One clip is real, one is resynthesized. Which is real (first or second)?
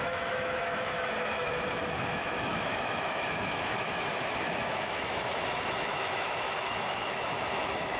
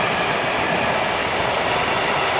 second